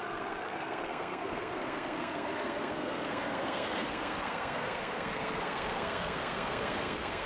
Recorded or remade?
remade